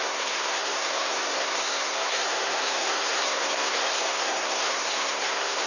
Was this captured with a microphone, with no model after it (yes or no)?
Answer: no